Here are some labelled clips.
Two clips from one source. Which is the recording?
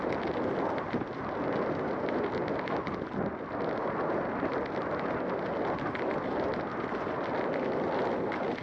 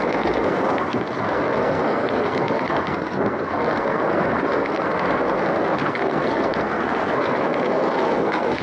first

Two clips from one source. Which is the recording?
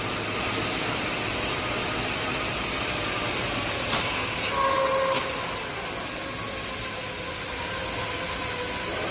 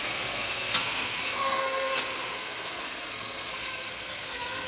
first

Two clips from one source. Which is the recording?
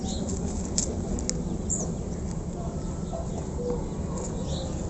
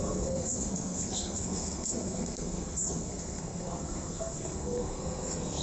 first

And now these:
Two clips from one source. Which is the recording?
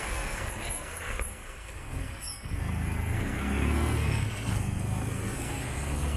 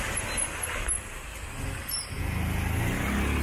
second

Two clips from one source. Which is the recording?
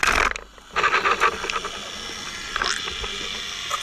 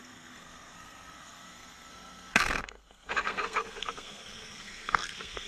first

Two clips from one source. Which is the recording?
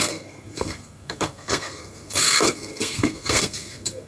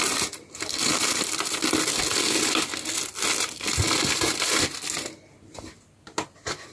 second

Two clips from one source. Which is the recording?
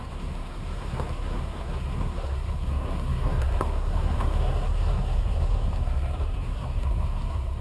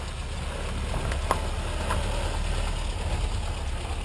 second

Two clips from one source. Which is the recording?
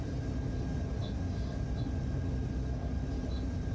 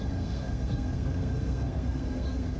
first